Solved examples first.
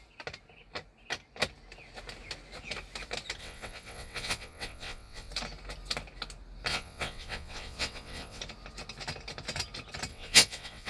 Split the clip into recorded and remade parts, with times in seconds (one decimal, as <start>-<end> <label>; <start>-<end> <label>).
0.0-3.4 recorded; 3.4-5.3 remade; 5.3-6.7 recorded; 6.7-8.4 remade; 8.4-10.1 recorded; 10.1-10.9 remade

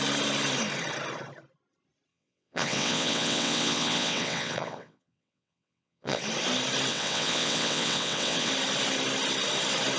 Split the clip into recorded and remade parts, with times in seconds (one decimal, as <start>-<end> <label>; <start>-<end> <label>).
0.0-2.1 recorded; 2.1-6.2 remade; 6.2-6.9 recorded; 6.9-8.5 remade; 8.5-10.0 recorded

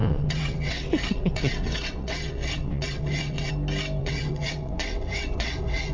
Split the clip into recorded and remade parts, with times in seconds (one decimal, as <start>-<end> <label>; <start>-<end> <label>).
0.0-3.5 remade; 3.5-4.0 recorded; 4.0-5.9 remade

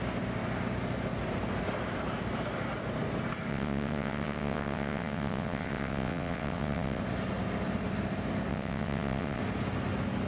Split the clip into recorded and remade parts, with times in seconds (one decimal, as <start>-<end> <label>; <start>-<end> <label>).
0.0-3.5 recorded; 3.5-7.0 remade; 7.0-8.5 recorded; 8.5-9.4 remade; 9.4-10.3 recorded